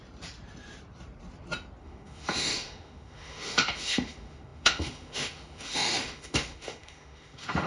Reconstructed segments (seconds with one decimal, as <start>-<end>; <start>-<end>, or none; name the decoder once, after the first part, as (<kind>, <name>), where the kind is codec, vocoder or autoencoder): 1.8-7.7 (autoencoder, DAC-VAE)